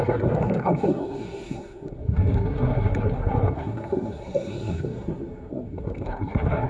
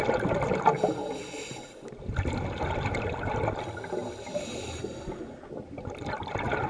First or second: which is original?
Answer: second